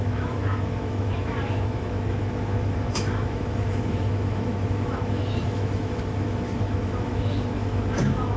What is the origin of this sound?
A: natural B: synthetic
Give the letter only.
B